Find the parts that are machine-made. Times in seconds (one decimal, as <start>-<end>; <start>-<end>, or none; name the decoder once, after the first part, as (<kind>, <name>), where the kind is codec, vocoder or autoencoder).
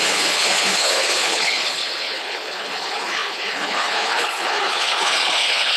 0.0-5.8 (codec, HILCodec)